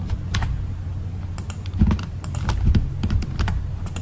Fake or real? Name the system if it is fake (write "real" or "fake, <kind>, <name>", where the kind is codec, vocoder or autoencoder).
real